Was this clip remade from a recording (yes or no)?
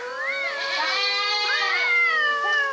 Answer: no